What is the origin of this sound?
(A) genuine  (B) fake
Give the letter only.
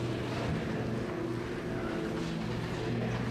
A